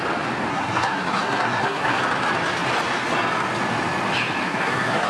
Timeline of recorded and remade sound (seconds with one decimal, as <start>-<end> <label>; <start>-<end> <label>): 0.0-0.5 recorded; 0.5-2.0 remade; 2.0-4.4 recorded; 4.4-5.1 remade